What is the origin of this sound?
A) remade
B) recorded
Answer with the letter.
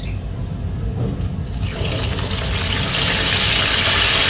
B